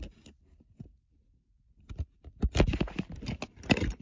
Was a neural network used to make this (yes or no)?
no